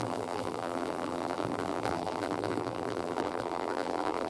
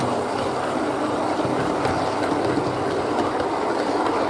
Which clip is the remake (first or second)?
first